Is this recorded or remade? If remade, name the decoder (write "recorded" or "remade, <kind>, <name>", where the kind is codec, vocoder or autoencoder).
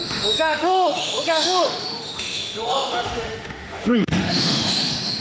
remade, autoencoder, DAC-VAE